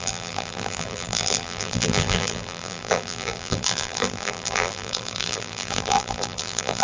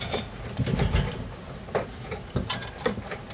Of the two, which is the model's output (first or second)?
first